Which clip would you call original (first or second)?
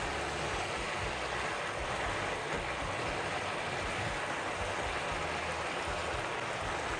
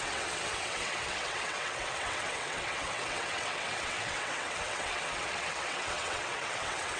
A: first